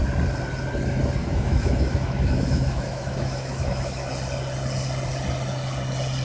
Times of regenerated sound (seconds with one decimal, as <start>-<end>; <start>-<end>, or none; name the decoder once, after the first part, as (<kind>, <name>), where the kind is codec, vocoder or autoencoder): 1.2-4.1 (autoencoder, DAC-VAE)